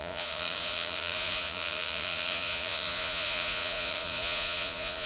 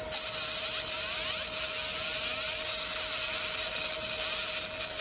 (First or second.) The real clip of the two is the second